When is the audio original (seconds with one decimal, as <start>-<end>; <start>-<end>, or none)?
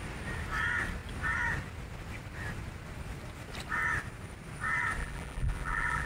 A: 0.0-5.0